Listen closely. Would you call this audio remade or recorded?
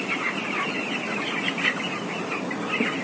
recorded